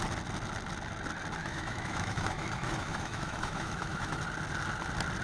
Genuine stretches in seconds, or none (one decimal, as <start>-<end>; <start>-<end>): 0.0-1.4; 4.2-5.2